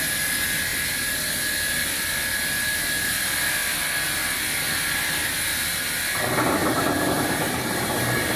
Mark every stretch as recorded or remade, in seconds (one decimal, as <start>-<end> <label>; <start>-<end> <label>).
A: 0.0-6.6 recorded; 6.6-8.4 remade